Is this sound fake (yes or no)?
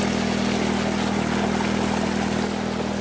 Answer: no